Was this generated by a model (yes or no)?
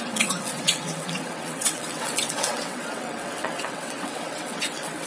yes